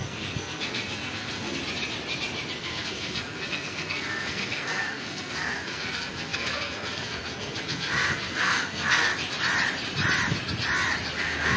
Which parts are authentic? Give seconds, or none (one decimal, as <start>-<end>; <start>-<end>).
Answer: 1.6-2.6; 9.1-11.2